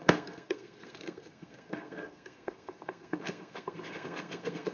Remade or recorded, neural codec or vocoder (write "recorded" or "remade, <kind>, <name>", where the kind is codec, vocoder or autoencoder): remade, codec, SNAC